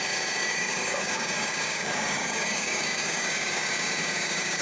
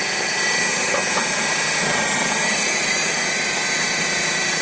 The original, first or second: second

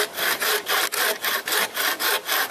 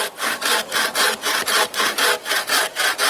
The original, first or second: second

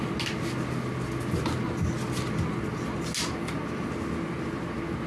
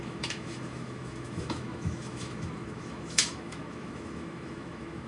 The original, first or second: first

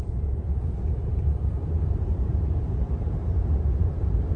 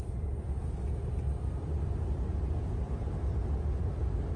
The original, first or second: second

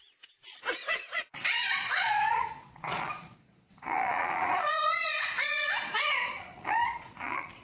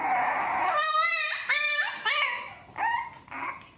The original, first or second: second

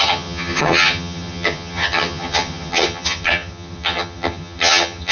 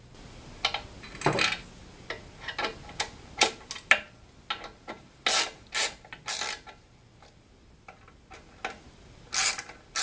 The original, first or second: second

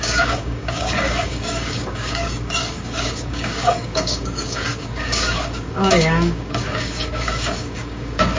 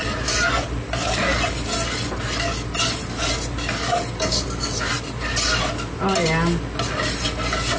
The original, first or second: second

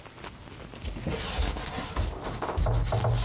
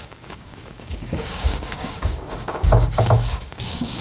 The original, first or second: first